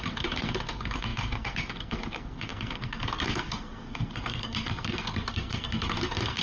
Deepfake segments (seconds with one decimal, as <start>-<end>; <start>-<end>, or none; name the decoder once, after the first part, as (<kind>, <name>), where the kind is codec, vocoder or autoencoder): 0.0-6.4 (codec, SNAC)